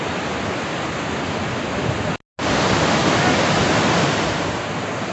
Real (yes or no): yes